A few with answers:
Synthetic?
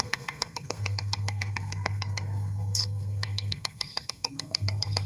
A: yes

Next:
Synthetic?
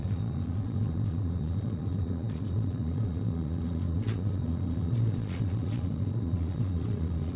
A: yes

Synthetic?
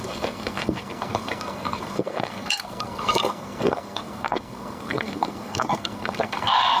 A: yes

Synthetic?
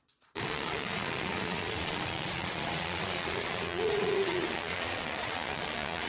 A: yes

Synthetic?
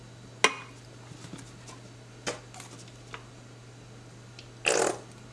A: no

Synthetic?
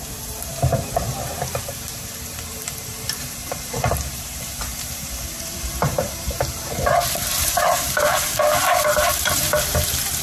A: yes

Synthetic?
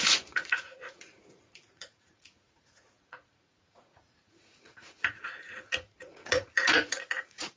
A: yes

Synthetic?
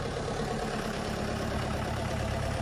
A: yes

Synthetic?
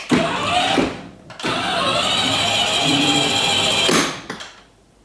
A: no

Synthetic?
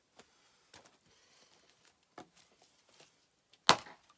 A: no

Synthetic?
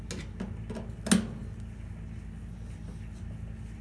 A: no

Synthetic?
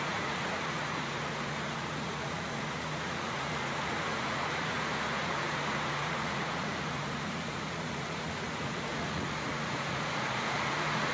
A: yes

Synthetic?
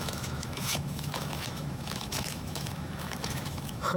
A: yes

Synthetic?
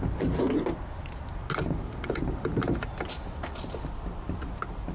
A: no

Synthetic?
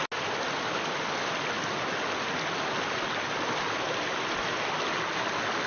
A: no